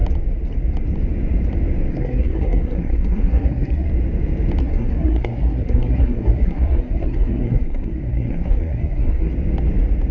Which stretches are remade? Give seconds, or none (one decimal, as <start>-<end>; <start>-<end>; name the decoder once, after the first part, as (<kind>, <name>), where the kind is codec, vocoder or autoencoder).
1.9-3.9 (codec, SNAC); 4.6-9.3